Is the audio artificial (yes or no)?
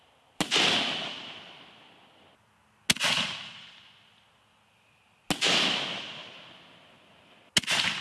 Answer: no